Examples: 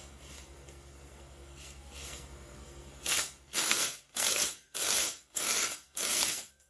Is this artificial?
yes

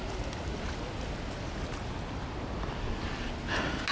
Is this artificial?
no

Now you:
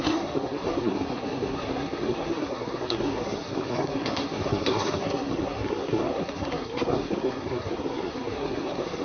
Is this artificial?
yes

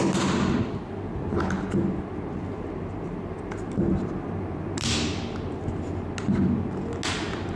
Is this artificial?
no